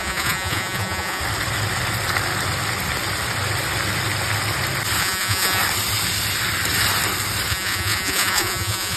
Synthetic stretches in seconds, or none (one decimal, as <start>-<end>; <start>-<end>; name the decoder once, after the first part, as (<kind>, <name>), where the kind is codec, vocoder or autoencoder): 0.0-1.2 (vocoder, Vocos); 5.0-5.6; 7.5-9.0